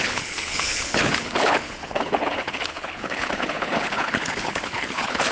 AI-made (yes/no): yes